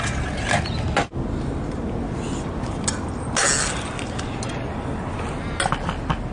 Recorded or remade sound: recorded